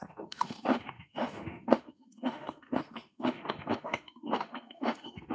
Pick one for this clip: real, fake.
fake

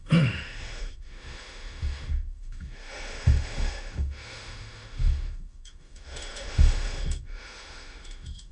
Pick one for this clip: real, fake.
fake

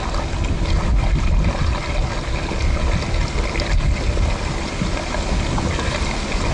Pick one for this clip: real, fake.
real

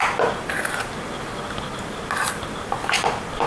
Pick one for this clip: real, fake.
real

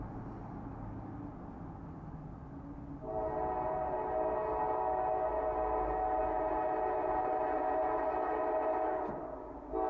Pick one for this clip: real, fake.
real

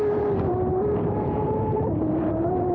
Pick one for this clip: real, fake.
fake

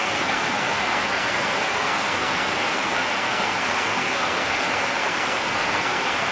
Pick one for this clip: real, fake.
fake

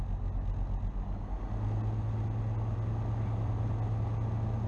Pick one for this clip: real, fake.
real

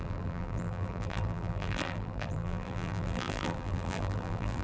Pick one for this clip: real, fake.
fake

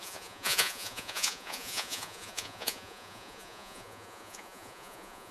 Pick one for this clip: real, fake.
fake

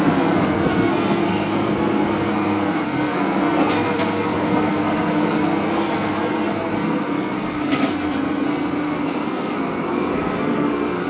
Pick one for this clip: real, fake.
fake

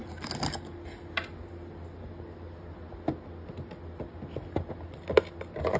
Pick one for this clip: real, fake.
real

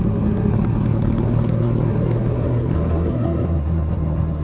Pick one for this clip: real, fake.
fake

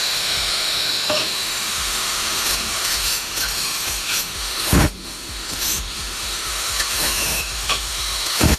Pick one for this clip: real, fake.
fake